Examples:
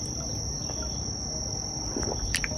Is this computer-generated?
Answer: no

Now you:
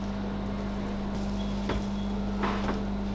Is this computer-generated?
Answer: no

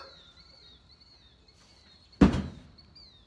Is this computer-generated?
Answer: no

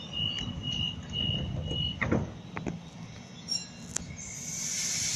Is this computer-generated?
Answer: no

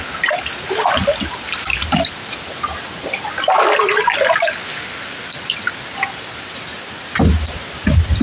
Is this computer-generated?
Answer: no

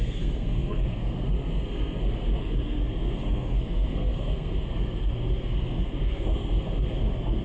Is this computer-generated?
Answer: yes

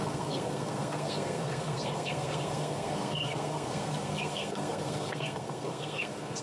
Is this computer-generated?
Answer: yes